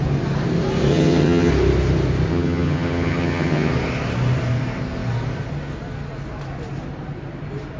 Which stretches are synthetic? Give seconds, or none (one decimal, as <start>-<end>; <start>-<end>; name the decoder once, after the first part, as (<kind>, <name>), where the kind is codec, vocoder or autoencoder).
0.9-1.5 (vocoder, HiFi-GAN); 2.3-3.7